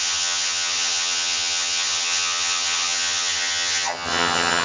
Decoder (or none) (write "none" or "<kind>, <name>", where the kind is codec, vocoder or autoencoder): vocoder, HiFi-GAN